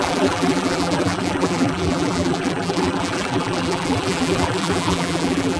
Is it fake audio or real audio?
fake